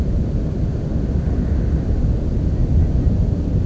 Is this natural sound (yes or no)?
yes